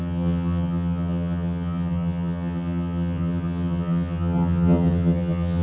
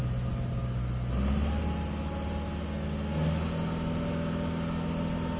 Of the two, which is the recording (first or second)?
second